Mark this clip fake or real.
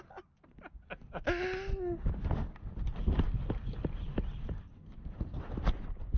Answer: real